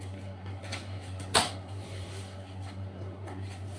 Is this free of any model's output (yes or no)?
no